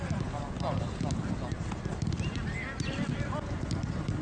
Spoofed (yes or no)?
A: no